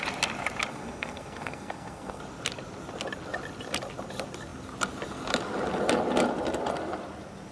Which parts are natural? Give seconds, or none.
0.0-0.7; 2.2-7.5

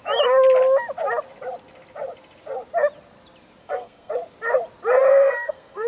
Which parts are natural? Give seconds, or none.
0.0-3.6; 4.1-5.1